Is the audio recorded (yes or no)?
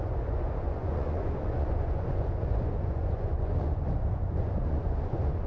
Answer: no